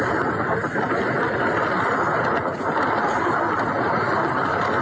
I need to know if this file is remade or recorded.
recorded